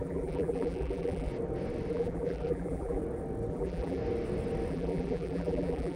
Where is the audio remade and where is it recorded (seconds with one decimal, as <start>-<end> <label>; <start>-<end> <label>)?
0.0-1.3 remade; 1.3-1.9 recorded; 1.9-3.0 remade; 3.0-3.5 recorded; 3.5-4.0 remade; 4.0-4.7 recorded; 4.7-6.0 remade